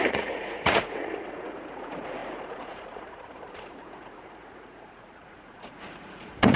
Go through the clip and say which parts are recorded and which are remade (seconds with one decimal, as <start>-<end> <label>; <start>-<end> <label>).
0.0-6.6 remade